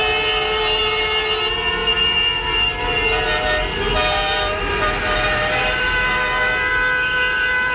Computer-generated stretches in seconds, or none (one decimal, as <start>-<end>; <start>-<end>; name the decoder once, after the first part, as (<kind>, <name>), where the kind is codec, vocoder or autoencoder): none